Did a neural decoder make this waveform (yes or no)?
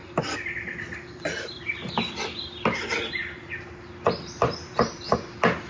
yes